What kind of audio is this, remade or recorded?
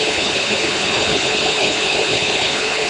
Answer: remade